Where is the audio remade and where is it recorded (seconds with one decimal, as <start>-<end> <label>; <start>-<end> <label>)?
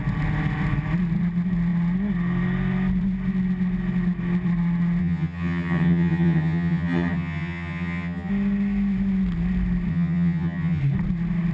0.0-5.0 recorded; 5.0-8.3 remade; 8.3-9.9 recorded; 9.9-10.8 remade; 10.8-11.5 recorded